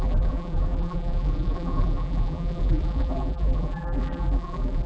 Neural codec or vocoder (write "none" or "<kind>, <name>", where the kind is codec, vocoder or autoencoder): vocoder, BigVGAN v2